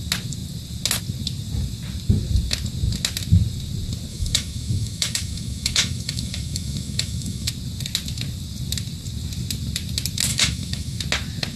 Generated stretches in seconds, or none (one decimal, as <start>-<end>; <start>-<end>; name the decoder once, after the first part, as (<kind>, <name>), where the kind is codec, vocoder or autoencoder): 4.1-7.5 (autoencoder, DAC-VAE); 10.3-11.0